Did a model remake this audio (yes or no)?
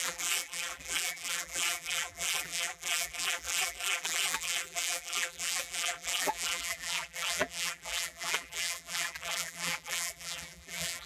yes